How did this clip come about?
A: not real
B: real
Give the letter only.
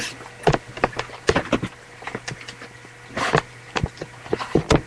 B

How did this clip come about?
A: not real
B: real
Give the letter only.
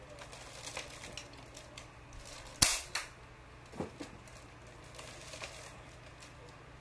B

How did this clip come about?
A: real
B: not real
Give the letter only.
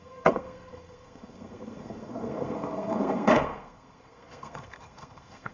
B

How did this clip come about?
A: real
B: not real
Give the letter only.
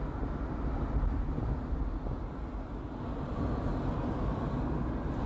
A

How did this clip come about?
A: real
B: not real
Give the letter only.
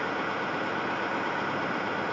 A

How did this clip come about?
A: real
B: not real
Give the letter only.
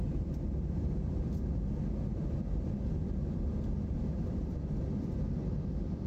A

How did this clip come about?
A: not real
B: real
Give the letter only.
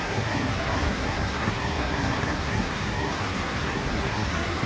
A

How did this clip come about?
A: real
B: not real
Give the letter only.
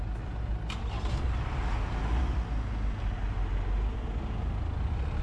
A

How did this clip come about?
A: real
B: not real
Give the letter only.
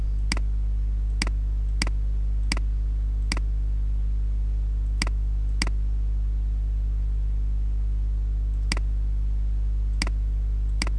A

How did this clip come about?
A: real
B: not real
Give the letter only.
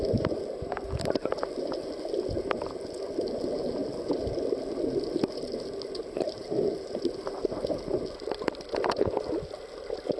A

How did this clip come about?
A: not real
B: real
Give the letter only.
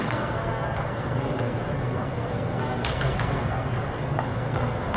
A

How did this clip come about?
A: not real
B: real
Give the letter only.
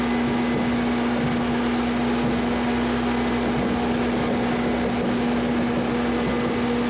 B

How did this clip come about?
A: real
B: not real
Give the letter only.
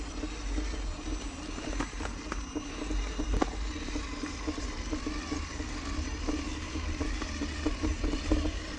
A